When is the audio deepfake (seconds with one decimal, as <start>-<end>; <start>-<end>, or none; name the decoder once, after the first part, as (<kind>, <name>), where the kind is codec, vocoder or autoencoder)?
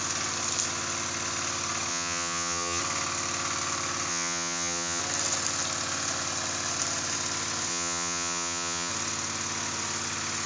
1.9-2.8 (vocoder, HiFi-GAN); 4.1-5.0; 7.7-8.9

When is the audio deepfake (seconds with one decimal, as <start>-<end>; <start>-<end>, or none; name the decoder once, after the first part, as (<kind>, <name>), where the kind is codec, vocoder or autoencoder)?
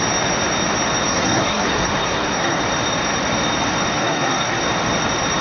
1.1-2.6 (codec, SNAC); 4.0-4.6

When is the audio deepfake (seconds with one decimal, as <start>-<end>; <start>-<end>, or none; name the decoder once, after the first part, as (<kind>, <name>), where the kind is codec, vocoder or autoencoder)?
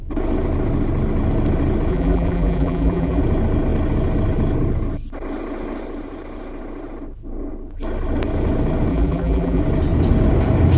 1.9-3.2 (vocoder, BigVGAN v2); 8.9-9.6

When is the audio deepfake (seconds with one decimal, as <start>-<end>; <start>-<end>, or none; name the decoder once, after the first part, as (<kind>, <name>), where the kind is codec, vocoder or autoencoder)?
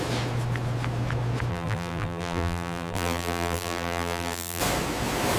1.5-4.6 (vocoder, BigVGAN v2)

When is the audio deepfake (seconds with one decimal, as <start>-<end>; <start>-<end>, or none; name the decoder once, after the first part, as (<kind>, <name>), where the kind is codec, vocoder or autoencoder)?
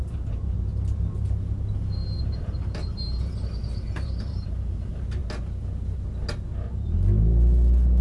0.0-0.7 (vocoder, BigVGAN v2); 2.2-5.2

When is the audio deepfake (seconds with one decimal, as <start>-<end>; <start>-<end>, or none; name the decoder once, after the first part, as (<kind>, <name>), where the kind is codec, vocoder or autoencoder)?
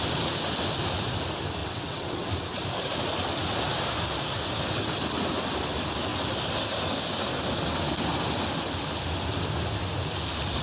1.6-2.3 (vocoder, WaveNeXt)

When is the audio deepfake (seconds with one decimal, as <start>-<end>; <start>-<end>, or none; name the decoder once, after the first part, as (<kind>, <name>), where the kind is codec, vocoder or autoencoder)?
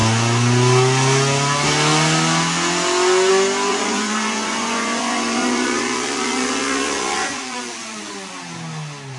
3.7-8.4 (vocoder, Vocos)